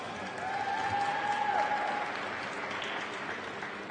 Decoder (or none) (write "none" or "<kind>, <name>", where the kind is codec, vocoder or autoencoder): none